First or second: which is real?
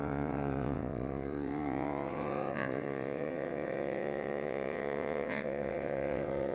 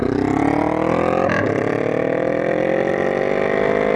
second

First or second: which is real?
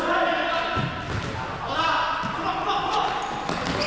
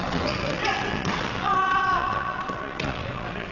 first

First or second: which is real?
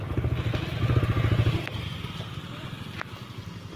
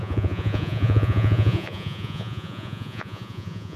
first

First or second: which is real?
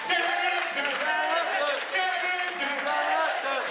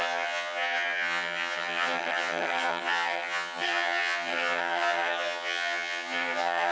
first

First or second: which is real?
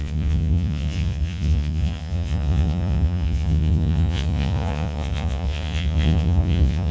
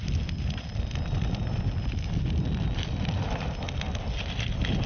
second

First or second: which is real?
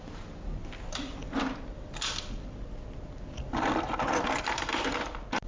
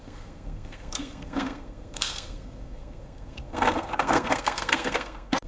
first